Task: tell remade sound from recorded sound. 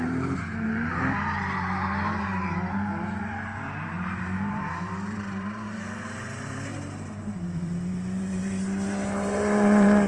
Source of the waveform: remade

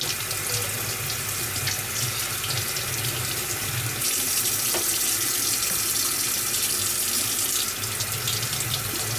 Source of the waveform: recorded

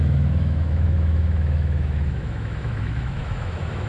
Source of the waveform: remade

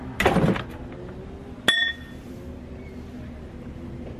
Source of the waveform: recorded